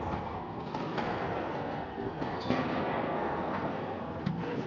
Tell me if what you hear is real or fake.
fake